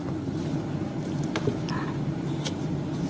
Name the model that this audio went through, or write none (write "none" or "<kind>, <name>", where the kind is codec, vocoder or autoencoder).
none